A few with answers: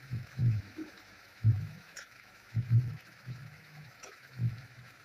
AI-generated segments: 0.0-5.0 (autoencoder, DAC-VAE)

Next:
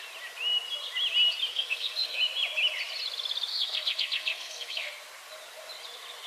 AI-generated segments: 1.5-2.2 (codec, SNAC); 3.5-4.9

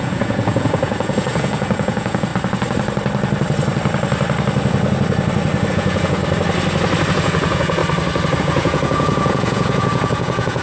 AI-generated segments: 0.0-2.3 (vocoder, Vocos); 5.7-6.2; 7.1-7.8; 8.4-10.6

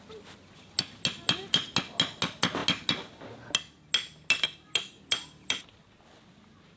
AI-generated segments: none